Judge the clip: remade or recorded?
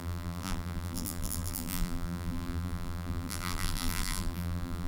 remade